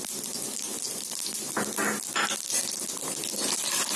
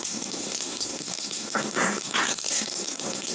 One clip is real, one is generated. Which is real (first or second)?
first